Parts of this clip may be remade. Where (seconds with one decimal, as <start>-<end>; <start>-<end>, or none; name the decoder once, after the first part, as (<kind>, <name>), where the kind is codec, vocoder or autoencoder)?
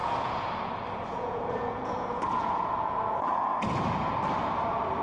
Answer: 0.0-0.7 (vocoder, Vocos); 1.1-4.1